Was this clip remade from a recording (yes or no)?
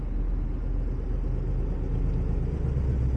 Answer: no